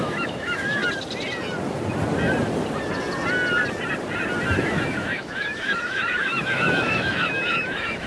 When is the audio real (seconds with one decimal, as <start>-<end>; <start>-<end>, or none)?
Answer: 0.8-4.6